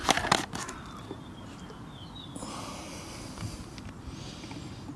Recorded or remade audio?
recorded